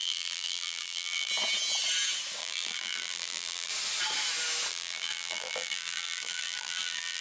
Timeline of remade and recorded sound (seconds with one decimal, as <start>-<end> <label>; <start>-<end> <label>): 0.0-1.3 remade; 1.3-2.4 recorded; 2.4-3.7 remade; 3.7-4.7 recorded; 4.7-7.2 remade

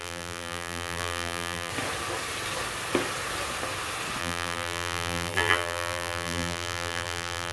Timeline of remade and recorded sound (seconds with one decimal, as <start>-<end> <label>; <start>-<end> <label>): 0.0-1.7 remade; 1.7-4.2 recorded; 4.2-7.5 remade

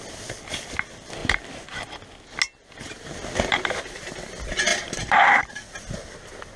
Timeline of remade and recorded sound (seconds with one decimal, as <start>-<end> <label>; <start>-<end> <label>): 0.0-4.7 recorded; 4.7-5.7 remade; 5.7-6.6 recorded

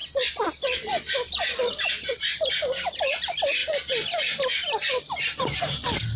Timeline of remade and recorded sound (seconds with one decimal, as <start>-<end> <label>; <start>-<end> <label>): 0.0-6.2 remade

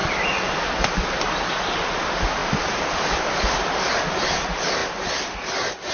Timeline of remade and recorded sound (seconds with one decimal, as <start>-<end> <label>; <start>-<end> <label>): 0.0-4.8 remade; 4.8-5.9 recorded